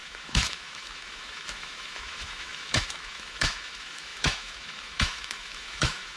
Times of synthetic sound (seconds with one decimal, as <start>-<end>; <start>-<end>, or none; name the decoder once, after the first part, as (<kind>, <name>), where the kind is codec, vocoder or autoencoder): 0.0-6.2 (autoencoder, DAC-VAE)